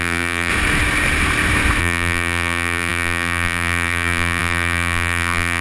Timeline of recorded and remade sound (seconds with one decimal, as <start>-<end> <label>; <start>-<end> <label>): 0.0-0.5 remade; 0.5-1.8 recorded; 1.8-5.6 remade